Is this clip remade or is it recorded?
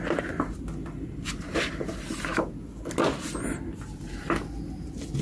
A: recorded